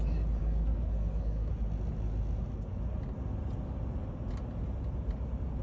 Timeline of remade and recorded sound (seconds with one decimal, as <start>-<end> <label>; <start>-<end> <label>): 0.0-0.4 recorded; 0.4-1.5 remade; 1.5-5.6 recorded